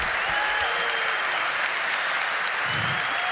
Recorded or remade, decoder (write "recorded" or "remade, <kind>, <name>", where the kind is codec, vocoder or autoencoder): recorded